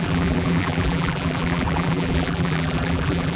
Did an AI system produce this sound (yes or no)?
yes